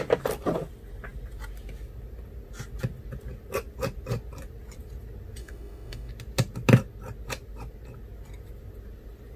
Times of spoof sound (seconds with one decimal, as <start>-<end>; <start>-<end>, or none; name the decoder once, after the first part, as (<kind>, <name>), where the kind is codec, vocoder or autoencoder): 5.4-6.1 (autoencoder, DAC-VAE)